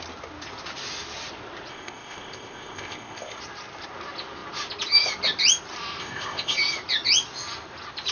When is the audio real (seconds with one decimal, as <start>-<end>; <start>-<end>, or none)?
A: 0.0-1.7; 3.4-6.0; 6.6-8.1